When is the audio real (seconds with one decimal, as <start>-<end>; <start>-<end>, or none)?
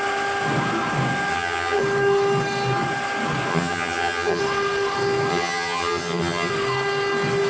0.0-1.3; 1.8-3.5; 4.4-5.3; 6.5-7.5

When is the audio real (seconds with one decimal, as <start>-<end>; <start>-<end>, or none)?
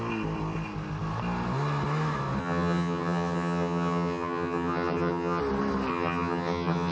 0.0-2.4; 5.4-5.9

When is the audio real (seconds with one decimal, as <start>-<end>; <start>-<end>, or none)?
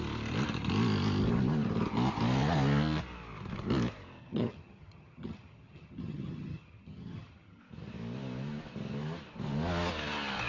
0.0-4.2; 7.6-10.5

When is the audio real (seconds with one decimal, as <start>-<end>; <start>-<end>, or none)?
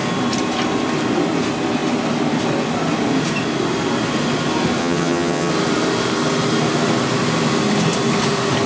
0.0-4.8; 5.5-8.7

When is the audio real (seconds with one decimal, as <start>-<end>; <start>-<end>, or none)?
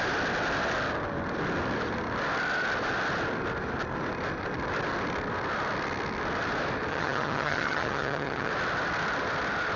0.0-6.9; 8.5-9.8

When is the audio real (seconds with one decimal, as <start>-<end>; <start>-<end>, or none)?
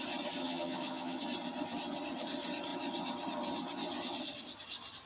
0.0-0.4; 1.2-5.1